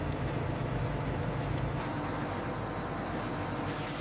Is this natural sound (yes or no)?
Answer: yes